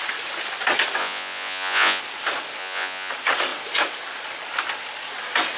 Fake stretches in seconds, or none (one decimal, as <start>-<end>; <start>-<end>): 1.0-2.0; 2.6-3.1